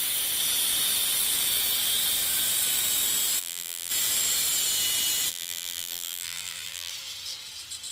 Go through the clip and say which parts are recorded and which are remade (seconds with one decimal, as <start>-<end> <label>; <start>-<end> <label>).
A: 0.0-3.4 recorded; 3.4-3.9 remade; 3.9-5.3 recorded; 5.3-6.9 remade; 6.9-7.9 recorded